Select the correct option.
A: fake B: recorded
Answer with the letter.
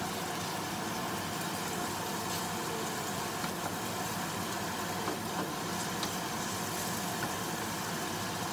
B